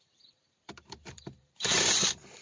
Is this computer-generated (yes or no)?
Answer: yes